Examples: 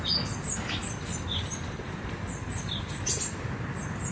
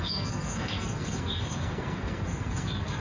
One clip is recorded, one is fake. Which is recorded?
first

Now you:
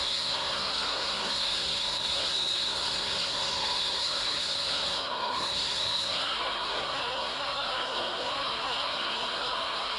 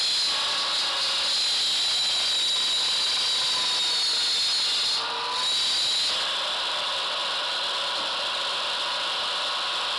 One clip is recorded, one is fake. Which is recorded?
second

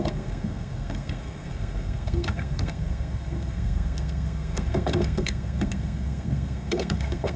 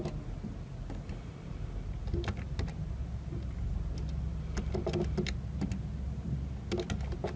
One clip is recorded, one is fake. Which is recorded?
second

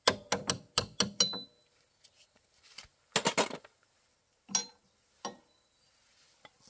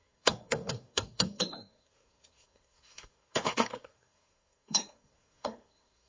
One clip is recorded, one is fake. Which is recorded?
first